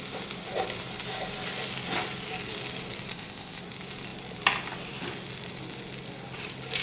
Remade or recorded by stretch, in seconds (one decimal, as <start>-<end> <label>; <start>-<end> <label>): 0.0-3.1 recorded; 3.1-3.6 remade; 3.6-6.8 recorded